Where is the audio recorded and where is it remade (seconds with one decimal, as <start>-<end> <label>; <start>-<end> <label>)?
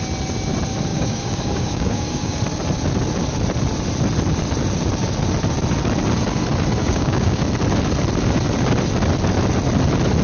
0.0-0.9 recorded; 0.9-2.4 remade; 2.4-6.8 recorded; 6.8-7.4 remade; 7.4-10.2 recorded